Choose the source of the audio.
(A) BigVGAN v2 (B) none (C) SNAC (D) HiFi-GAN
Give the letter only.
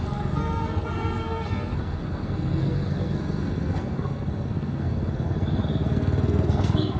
C